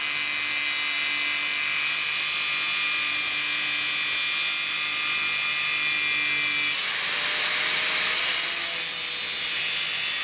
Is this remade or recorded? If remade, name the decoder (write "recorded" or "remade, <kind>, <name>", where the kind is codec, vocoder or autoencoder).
recorded